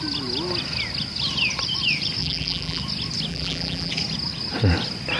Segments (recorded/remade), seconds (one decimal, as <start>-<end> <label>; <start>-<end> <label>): 0.0-2.2 recorded; 2.2-2.8 remade; 2.8-3.3 recorded; 3.3-3.9 remade; 3.9-5.2 recorded